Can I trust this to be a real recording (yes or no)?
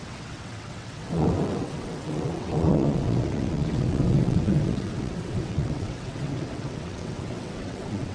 no